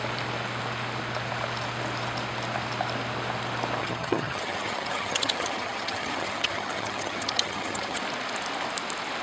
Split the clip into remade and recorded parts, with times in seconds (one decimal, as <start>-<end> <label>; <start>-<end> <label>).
0.0-3.8 recorded; 3.8-8.0 remade; 8.0-9.2 recorded